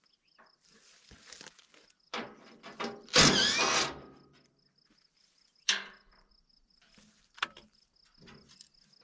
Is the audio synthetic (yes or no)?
no